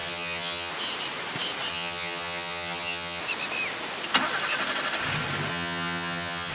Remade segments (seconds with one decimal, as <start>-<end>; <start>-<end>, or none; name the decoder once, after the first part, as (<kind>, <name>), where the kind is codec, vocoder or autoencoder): 0.0-0.7 (vocoder, HiFi-GAN); 1.7-3.2; 5.5-6.5